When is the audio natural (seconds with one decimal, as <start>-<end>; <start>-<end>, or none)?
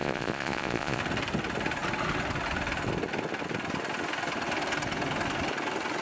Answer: 1.0-6.0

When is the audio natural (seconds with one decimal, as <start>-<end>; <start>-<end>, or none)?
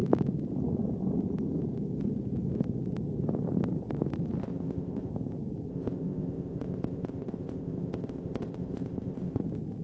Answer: 0.0-4.4; 5.1-5.7; 9.4-9.8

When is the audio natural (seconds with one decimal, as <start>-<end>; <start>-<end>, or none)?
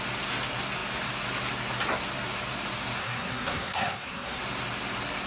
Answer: 0.0-3.0; 4.4-5.3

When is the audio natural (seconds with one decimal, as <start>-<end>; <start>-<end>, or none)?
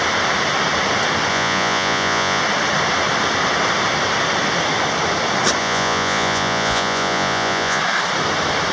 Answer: 0.0-1.3; 2.4-5.6; 7.8-8.7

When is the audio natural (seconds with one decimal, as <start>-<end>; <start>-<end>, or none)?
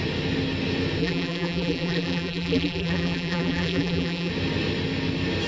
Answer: 0.0-1.0; 4.3-5.5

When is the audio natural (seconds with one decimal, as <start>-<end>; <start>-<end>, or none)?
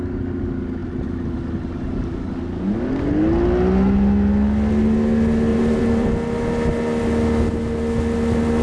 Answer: 0.0-5.5; 6.1-8.6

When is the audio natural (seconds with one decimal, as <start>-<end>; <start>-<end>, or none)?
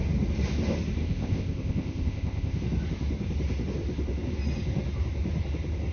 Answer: 0.0-1.0; 2.6-5.9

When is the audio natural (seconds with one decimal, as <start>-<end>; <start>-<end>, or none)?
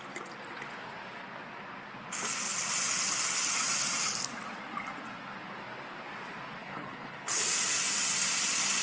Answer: 0.0-6.6; 7.4-8.8